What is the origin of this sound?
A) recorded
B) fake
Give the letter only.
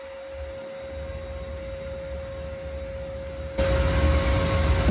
A